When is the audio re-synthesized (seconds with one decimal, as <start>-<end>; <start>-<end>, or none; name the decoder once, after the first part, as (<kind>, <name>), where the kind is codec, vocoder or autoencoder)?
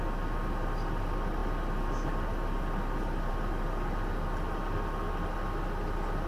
none